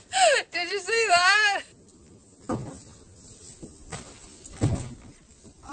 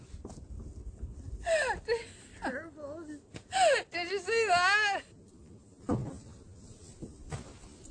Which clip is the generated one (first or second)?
first